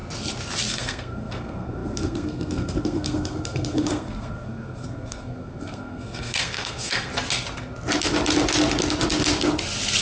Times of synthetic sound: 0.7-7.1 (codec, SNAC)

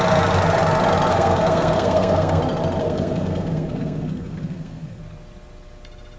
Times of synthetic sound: 1.1-2.4 (codec, SNAC); 2.8-5.0

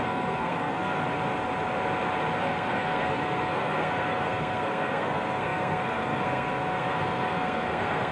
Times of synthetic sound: 0.0-1.0 (codec, SNAC); 2.4-8.1

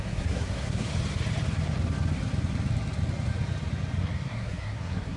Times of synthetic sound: 0.0-0.9 (codec, SNAC); 4.0-5.2

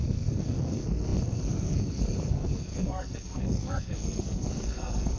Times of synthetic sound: 0.0-5.2 (codec, SNAC)